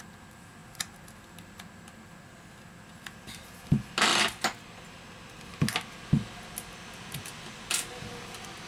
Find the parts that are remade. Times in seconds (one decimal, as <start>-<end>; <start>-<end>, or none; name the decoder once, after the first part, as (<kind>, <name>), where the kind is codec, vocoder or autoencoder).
none